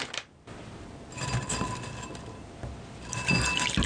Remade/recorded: recorded